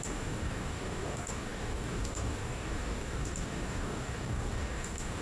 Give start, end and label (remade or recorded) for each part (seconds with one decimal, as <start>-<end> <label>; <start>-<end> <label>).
0.0-5.2 remade